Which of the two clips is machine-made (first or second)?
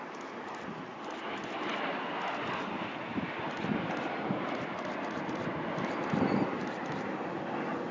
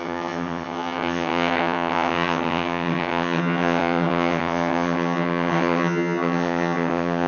second